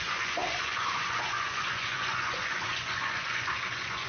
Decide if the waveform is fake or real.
fake